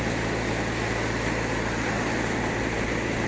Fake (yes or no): no